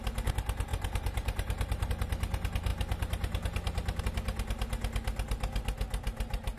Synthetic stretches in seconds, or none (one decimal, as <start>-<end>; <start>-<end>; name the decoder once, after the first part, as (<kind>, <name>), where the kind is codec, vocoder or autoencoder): 0.7-1.9 (vocoder, BigVGAN v2)